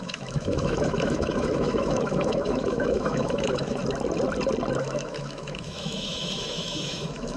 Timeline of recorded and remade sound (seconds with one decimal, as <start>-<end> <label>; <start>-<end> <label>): 0.0-3.8 remade; 3.8-4.8 recorded; 4.8-7.4 remade